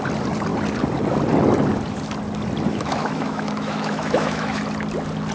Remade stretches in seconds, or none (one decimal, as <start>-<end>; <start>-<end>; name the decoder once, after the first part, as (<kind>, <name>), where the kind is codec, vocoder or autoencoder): 2.7-4.6 (autoencoder, DAC-VAE)